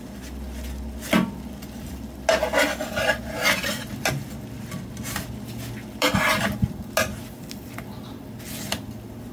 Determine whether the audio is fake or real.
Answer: real